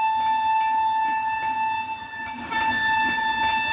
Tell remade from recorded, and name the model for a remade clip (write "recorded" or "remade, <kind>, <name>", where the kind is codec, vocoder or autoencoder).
recorded